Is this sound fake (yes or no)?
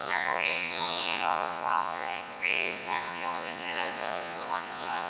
yes